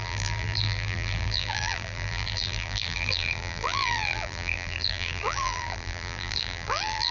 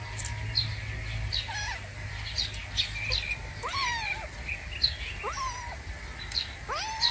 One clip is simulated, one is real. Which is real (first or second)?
second